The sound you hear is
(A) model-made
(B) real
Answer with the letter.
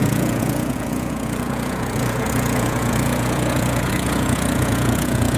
A